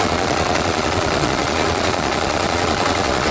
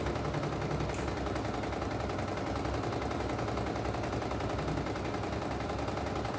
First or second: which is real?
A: second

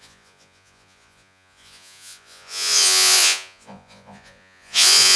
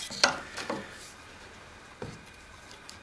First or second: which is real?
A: second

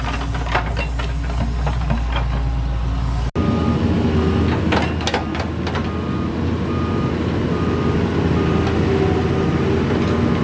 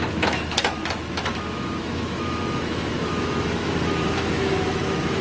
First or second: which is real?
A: first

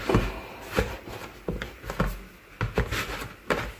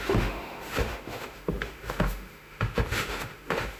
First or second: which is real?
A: first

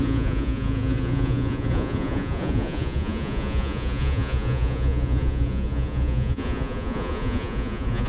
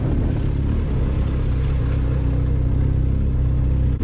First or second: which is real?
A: second